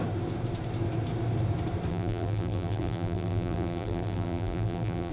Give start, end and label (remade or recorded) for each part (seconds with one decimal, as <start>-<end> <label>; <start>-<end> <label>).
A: 0.0-1.9 recorded; 1.9-5.1 remade